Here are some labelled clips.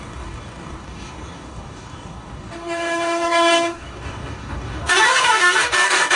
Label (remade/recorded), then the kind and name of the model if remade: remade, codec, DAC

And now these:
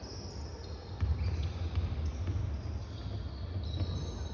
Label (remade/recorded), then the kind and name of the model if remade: recorded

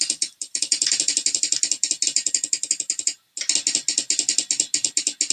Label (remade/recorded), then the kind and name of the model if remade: recorded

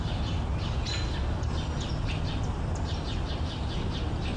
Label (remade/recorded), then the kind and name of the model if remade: recorded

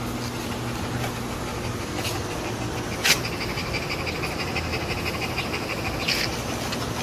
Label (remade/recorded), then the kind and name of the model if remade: recorded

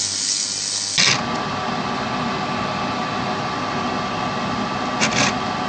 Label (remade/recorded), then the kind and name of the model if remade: recorded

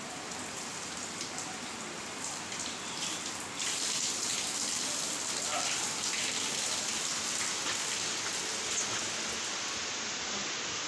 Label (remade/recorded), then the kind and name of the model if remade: recorded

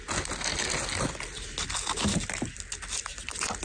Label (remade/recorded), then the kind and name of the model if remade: recorded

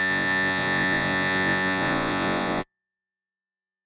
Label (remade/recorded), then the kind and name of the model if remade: remade, vocoder, Vocos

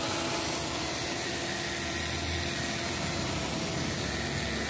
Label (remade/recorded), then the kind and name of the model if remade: recorded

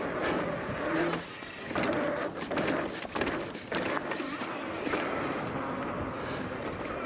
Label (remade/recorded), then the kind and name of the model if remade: recorded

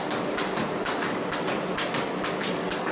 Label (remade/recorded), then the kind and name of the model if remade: recorded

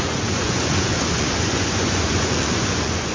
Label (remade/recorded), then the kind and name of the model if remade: remade, vocoder, Vocos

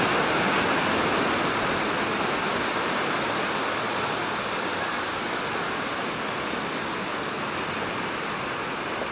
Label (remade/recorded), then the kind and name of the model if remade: recorded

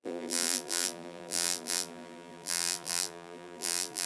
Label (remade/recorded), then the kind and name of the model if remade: remade, vocoder, BigVGAN v2